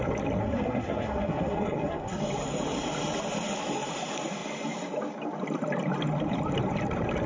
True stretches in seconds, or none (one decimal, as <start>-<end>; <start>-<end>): 0.0-0.4; 2.2-7.3